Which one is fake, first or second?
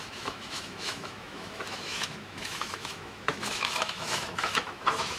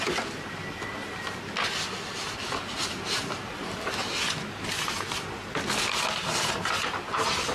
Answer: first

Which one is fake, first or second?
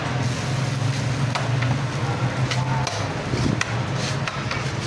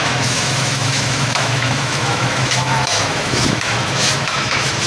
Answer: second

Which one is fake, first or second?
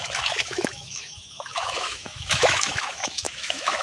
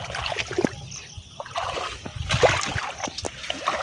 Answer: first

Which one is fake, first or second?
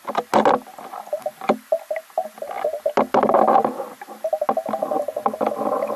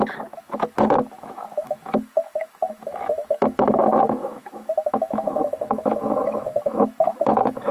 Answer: second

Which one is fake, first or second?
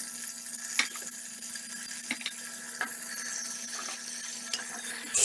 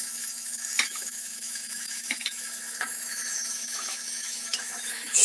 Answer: second